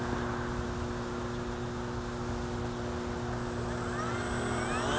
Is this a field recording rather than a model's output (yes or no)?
yes